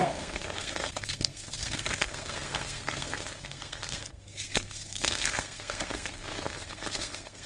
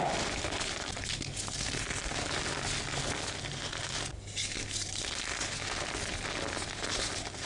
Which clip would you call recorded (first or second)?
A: second